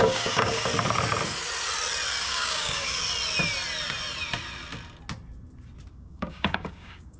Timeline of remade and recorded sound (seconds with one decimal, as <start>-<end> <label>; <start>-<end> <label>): 0.0-0.7 remade; 0.7-2.2 recorded; 2.2-3.0 remade; 3.0-5.9 recorded; 5.9-7.2 remade